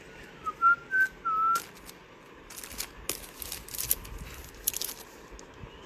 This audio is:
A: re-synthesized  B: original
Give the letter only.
B